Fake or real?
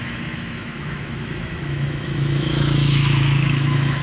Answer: fake